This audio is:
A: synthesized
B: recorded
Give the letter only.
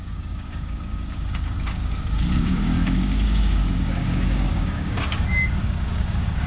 A